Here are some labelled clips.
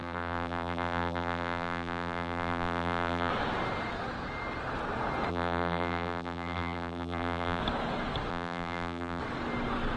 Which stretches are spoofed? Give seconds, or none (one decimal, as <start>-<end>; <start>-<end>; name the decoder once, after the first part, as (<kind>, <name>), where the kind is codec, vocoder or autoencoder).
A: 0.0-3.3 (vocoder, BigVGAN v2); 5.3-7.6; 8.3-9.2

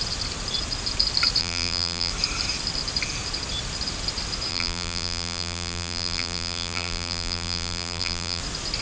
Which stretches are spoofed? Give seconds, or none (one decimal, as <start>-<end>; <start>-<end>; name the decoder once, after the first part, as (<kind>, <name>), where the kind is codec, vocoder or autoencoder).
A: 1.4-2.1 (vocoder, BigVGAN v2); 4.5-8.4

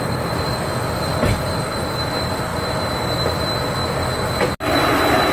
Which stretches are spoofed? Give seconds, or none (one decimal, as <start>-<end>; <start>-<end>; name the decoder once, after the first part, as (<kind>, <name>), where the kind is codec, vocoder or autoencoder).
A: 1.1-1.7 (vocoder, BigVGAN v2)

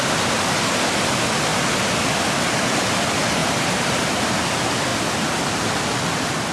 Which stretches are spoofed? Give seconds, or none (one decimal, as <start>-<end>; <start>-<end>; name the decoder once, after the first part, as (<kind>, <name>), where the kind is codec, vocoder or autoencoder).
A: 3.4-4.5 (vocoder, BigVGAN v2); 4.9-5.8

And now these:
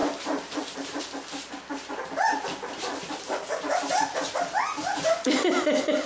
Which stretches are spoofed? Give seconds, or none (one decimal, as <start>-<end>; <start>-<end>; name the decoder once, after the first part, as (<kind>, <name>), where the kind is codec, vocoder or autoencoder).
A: 0.0-1.0 (vocoder, BigVGAN v2)

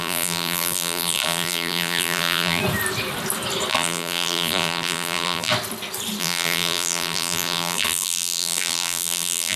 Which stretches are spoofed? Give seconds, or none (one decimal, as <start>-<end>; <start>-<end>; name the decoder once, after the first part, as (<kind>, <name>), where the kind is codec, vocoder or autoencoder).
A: 0.0-2.6 (vocoder, BigVGAN v2); 3.7-5.5; 6.2-9.6